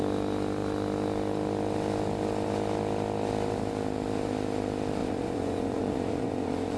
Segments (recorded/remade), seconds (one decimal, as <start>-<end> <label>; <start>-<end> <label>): 0.0-5.0 recorded; 5.0-6.8 remade